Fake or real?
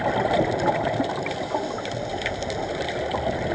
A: real